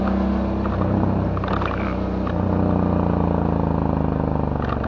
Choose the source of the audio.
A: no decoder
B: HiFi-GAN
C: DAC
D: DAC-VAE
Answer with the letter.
A